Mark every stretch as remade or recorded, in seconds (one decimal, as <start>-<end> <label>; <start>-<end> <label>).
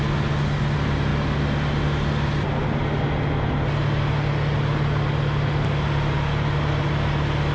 0.0-7.5 recorded